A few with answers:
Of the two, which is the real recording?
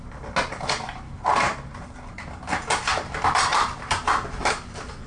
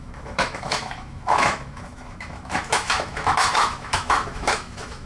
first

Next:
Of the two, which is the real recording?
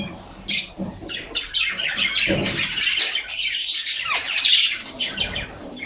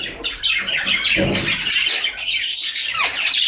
second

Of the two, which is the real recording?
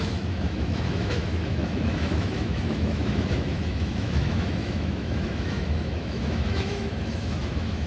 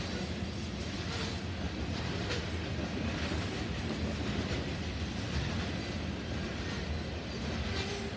second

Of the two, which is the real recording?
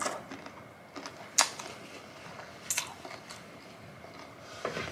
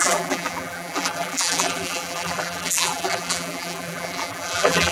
first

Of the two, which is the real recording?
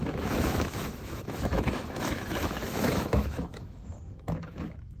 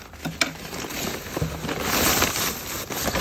second